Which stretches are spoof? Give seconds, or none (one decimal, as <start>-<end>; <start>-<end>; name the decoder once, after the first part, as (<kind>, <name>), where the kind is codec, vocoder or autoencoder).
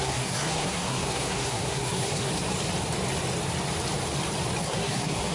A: 0.0-2.3 (codec, SNAC); 4.6-5.3